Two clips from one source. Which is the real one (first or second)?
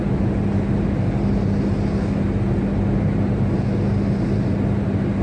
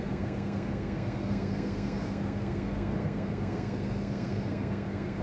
first